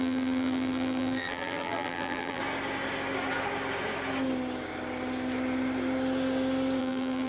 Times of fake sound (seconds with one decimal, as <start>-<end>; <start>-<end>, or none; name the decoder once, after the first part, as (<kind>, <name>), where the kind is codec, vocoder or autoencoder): 0.0-2.4 (vocoder, BigVGAN v2); 6.8-7.3